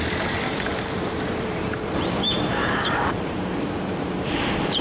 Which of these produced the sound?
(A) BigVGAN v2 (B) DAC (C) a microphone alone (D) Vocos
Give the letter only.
A